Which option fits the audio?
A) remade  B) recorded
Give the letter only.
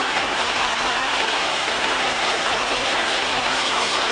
A